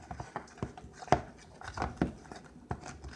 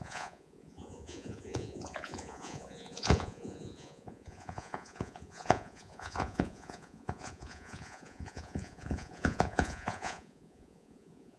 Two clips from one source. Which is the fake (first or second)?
second